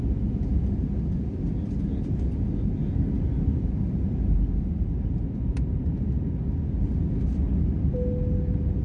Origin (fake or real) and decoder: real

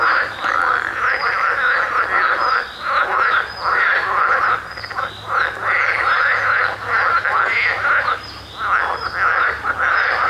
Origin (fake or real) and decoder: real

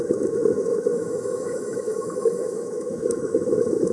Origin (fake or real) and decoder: fake, autoencoder, DAC-VAE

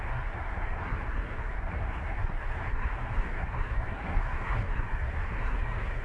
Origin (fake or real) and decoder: fake, codec, SNAC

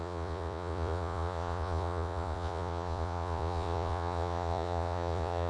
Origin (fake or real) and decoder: fake, vocoder, Vocos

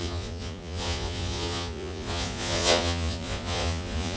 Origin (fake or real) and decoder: fake, vocoder, Vocos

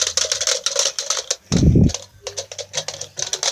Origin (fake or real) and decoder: real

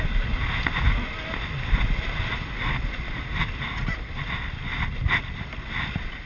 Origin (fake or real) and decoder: real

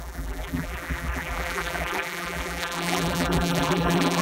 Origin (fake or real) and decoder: fake, vocoder, BigVGAN v2